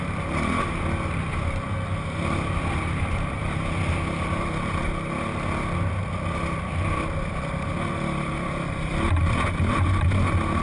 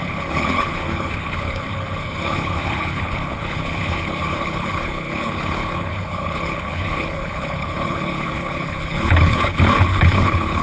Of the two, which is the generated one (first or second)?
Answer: second